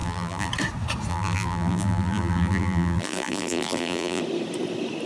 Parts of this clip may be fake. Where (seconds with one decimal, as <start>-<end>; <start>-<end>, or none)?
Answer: 0.0-0.5; 1.1-4.2